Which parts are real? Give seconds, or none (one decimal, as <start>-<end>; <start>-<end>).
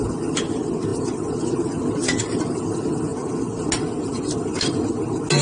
0.0-5.4